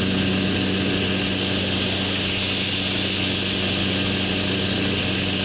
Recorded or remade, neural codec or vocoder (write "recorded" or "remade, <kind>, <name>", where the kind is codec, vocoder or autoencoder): recorded